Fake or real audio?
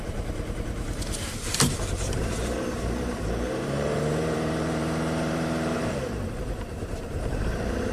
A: fake